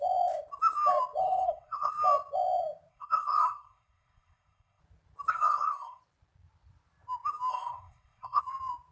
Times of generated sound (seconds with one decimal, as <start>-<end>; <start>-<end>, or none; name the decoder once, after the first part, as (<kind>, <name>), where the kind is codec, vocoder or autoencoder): 1.2-1.9 (codec, SNAC); 2.9-4.8; 5.3-6.0; 7.5-8.4